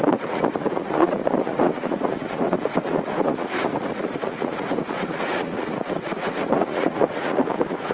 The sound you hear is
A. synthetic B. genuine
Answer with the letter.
A